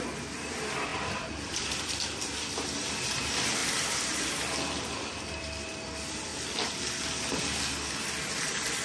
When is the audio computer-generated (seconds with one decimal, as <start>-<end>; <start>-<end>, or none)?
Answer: 0.0-3.6; 4.3-6.3; 8.2-8.8